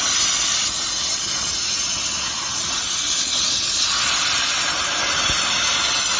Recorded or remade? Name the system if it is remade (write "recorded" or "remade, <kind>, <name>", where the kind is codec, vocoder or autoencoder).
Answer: recorded